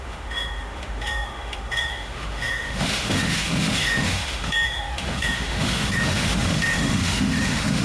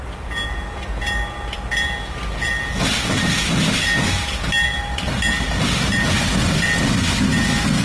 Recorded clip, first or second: second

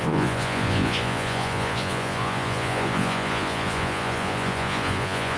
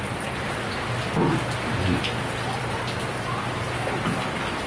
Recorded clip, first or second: second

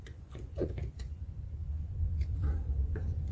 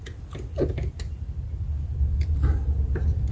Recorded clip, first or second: second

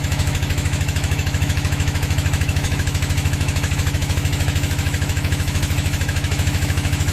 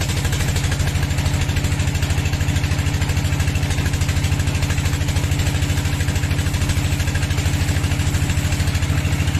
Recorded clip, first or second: second